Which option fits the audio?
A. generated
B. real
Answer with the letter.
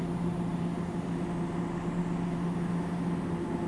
B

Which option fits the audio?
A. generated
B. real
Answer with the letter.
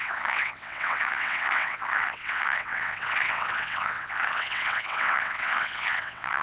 A